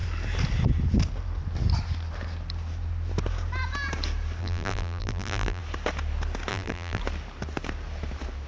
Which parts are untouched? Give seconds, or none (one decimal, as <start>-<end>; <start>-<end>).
0.0-4.4; 5.6-6.5; 7.0-8.5